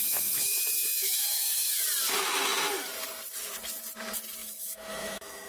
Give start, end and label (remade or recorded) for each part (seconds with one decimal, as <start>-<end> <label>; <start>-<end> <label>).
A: 0.0-1.8 remade; 1.8-4.4 recorded; 4.4-5.5 remade

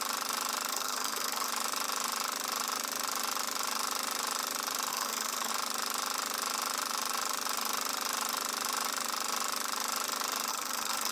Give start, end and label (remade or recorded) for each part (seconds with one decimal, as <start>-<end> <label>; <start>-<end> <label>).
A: 0.0-0.7 recorded; 0.7-1.5 remade; 1.5-4.9 recorded; 4.9-5.5 remade; 5.5-10.5 recorded; 10.5-11.1 remade

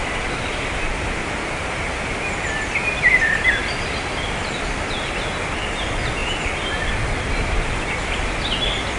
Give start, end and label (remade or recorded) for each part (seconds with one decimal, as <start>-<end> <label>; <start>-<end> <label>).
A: 0.0-3.6 recorded; 3.6-4.6 remade; 4.6-6.2 recorded; 6.2-8.3 remade; 8.3-9.0 recorded